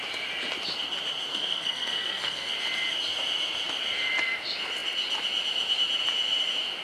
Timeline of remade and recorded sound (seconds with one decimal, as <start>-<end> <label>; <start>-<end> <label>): 0.0-1.3 recorded; 1.3-2.5 remade; 2.5-6.8 recorded